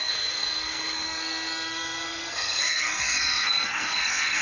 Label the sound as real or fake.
fake